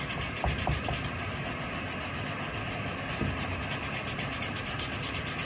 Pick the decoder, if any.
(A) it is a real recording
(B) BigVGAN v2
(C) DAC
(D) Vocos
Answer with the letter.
A